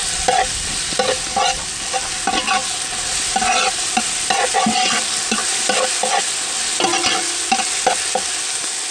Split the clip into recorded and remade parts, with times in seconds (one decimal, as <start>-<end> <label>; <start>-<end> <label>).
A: 0.0-8.9 recorded